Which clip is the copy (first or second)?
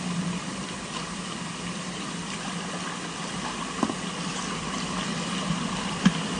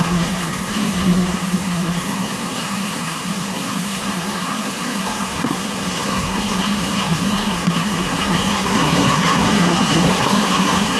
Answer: second